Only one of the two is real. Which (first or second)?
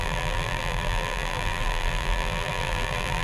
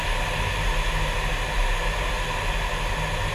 second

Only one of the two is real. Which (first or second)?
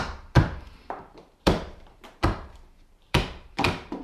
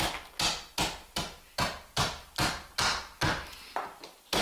second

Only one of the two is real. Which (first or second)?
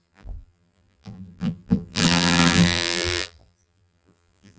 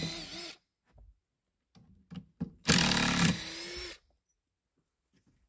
second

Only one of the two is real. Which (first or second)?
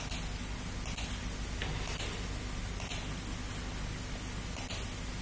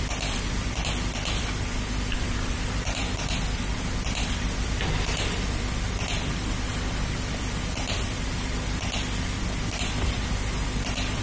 first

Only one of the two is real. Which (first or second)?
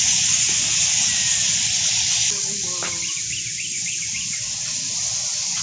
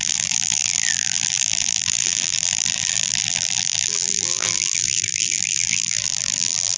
first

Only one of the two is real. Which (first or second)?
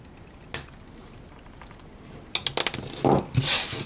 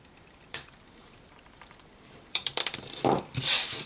first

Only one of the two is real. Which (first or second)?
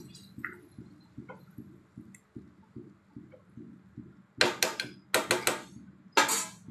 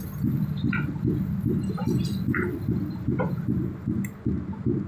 first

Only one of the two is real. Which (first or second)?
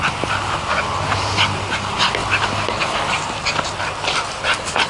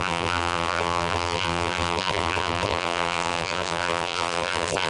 first